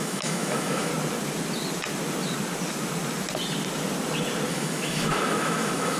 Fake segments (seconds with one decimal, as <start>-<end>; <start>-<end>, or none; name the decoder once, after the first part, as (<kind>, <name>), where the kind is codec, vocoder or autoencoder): 0.0-0.9 (autoencoder, DAC-VAE); 4.5-6.0